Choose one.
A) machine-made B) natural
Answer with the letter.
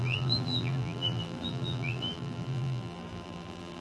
A